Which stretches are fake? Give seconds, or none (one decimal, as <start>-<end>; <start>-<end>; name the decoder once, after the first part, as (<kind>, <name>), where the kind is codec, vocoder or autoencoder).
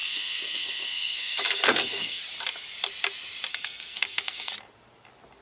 0.0-2.2 (codec, SNAC); 3.5-4.5